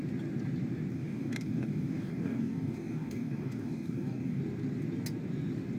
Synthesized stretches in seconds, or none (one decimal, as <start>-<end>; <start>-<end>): 0.9-4.4